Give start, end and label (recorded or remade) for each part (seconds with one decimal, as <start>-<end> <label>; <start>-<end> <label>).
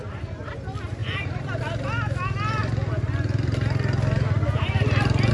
0.0-1.0 recorded; 1.0-1.6 remade; 1.6-5.3 recorded